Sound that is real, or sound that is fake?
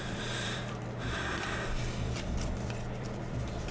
fake